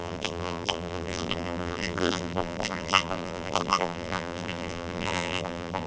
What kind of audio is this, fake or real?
fake